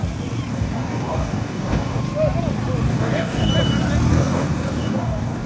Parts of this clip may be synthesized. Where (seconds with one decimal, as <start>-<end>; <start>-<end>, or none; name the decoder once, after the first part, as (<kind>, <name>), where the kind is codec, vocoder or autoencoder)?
0.5-2.0 (codec, DAC); 2.9-3.5; 4.1-5.5